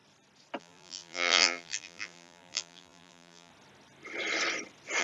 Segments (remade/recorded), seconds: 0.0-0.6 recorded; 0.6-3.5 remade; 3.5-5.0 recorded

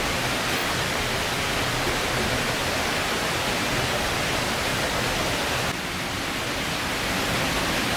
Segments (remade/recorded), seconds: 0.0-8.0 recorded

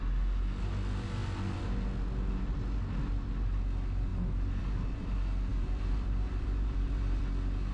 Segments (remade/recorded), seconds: 0.0-5.5 recorded; 5.5-7.2 remade; 7.2-7.7 recorded

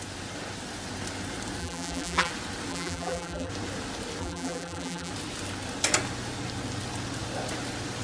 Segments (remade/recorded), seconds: 0.0-1.6 recorded; 1.6-2.3 remade; 2.3-2.7 recorded; 2.7-3.5 remade; 3.5-4.2 recorded; 4.2-5.1 remade; 5.1-8.0 recorded

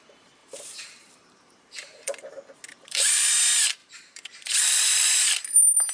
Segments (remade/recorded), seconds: 0.0-0.4 recorded; 0.4-2.3 remade; 2.3-2.7 recorded; 2.7-3.3 remade; 3.3-3.8 recorded; 3.8-5.2 remade; 5.2-5.9 recorded